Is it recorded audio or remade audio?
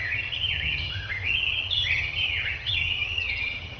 remade